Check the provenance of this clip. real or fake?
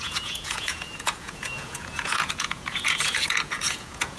fake